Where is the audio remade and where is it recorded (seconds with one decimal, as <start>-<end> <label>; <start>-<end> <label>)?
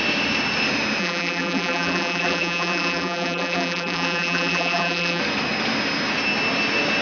0.0-1.0 recorded; 1.0-5.2 remade; 5.2-7.0 recorded